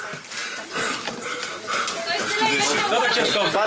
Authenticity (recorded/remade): recorded